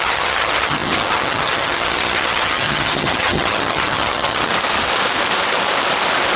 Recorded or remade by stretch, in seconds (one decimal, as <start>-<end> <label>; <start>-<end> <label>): 0.0-4.5 remade; 4.5-6.4 recorded